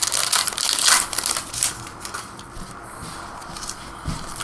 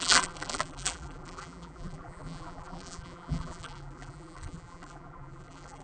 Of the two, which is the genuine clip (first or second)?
first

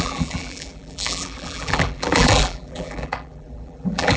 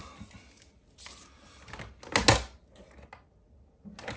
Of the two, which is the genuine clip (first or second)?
second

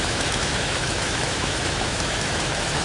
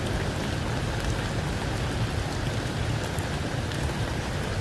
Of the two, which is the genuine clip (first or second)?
second